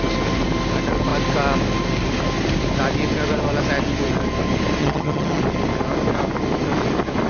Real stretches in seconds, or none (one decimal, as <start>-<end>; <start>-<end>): 0.0-4.8; 5.4-7.3